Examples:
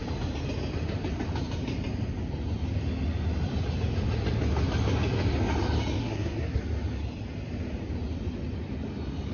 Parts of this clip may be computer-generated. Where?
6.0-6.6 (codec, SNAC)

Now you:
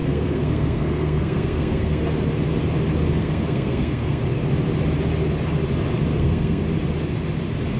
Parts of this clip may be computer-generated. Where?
0.0-2.0 (codec, SNAC); 3.2-4.2; 6.1-6.6

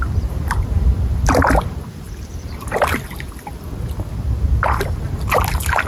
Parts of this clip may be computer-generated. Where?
2.3-2.9 (vocoder, BigVGAN v2)

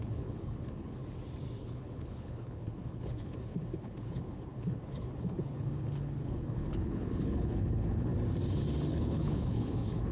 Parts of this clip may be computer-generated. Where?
0.0-1.0 (codec, HILCodec); 1.6-8.1; 8.9-10.1

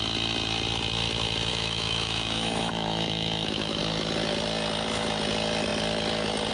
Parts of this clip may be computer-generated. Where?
1.5-3.8 (autoencoder, DAC-VAE)